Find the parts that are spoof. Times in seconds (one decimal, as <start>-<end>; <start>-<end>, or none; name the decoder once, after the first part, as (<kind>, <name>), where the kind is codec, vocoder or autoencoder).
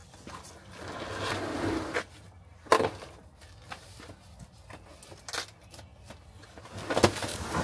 none